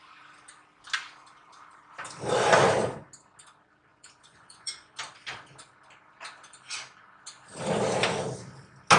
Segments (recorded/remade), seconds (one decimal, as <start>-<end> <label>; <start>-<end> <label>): 0.0-3.9 recorded; 3.9-4.9 remade; 4.9-9.0 recorded